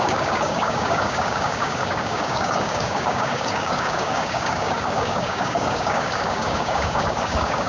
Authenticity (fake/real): fake